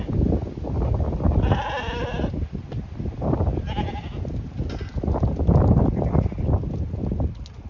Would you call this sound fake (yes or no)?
no